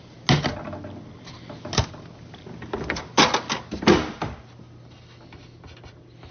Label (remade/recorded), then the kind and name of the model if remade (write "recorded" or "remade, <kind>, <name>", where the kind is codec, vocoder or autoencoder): recorded